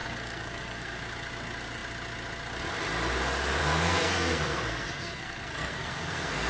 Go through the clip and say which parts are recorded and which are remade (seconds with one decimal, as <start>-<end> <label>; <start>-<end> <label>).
0.0-1.0 remade; 1.0-3.6 recorded; 3.6-6.5 remade